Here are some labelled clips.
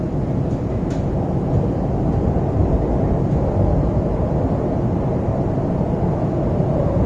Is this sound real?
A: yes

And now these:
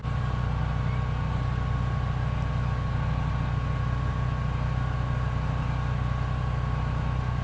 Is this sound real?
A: yes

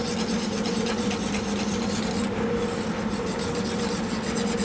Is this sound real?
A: yes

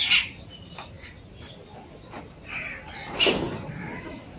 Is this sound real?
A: yes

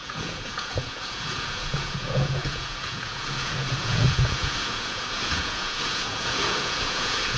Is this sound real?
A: no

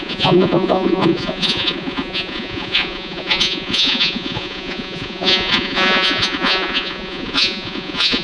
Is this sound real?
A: no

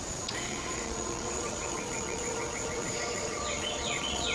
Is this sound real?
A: no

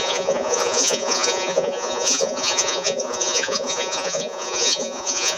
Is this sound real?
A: no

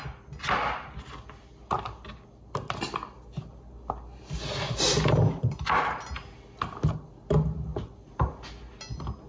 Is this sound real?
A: yes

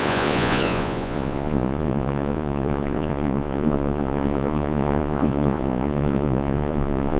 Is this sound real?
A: no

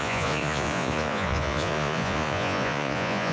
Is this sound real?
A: no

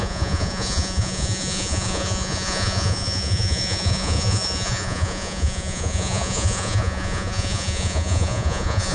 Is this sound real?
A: no